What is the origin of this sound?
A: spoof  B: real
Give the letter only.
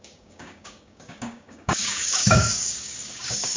A